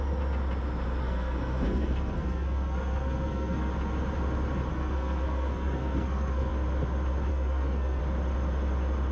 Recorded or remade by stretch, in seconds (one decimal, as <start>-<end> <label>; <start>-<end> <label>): 0.0-1.0 recorded; 1.0-3.7 remade; 3.7-4.7 recorded; 4.7-6.5 remade; 6.5-7.3 recorded; 7.3-8.0 remade; 8.0-9.1 recorded